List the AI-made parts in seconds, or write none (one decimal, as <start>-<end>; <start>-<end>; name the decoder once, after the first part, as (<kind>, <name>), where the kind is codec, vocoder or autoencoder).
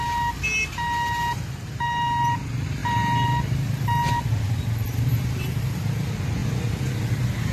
2.8-4.1 (vocoder, BigVGAN v2); 5.1-5.6